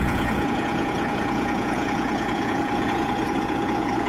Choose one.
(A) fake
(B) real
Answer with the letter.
A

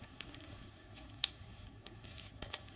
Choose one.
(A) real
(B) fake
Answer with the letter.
B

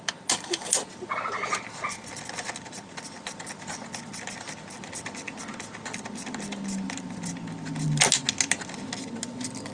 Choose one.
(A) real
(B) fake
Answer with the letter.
A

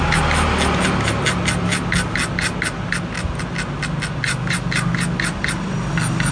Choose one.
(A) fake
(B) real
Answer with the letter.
B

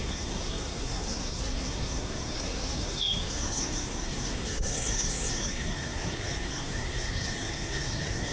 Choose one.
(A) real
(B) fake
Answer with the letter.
B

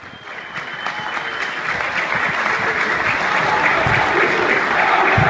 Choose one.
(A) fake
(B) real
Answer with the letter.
B